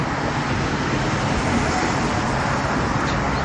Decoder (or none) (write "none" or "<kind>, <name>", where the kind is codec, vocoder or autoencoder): none